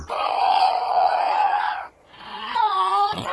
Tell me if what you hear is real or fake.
fake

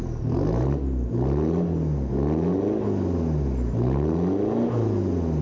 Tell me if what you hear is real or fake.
real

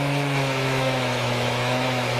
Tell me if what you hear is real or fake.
fake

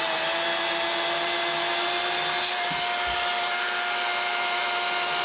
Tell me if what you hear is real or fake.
real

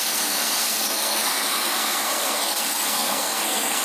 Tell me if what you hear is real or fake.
fake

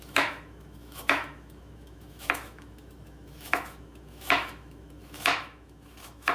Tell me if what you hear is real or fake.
fake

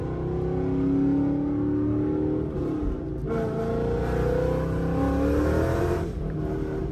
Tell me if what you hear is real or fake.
real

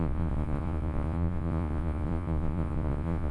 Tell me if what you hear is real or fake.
fake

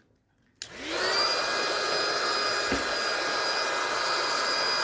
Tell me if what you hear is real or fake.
real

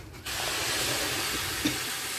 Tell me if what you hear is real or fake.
real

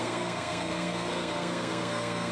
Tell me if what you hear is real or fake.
fake